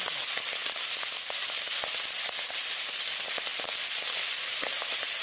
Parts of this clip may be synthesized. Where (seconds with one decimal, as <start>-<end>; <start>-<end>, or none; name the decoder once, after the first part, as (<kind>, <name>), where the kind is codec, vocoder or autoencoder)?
none